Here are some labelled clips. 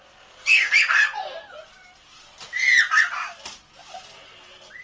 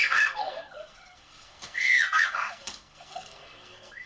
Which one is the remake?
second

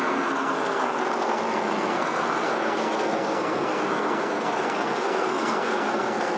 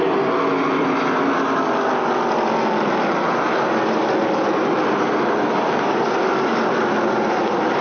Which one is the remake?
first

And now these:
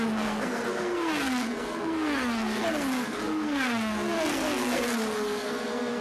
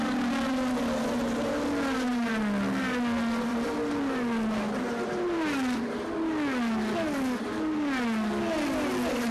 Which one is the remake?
first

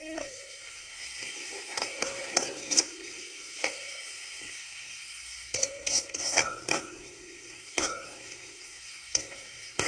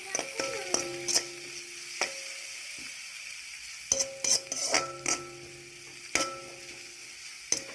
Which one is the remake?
first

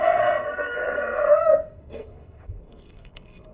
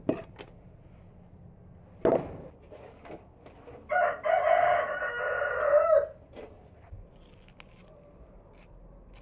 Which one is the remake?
first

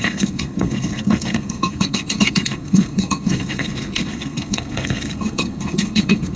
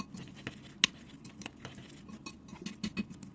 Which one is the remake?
first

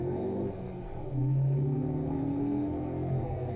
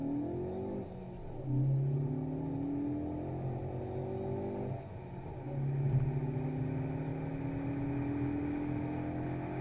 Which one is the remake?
first